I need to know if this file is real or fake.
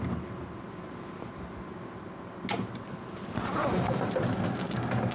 real